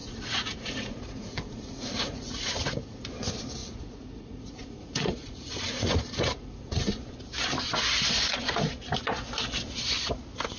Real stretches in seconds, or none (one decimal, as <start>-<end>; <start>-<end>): 3.1-3.6; 7.0-10.6